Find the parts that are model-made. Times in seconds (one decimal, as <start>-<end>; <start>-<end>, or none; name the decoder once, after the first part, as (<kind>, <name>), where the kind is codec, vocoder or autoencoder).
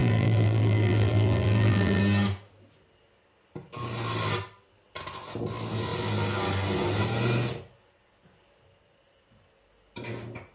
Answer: 0.0-2.0 (vocoder, BigVGAN v2)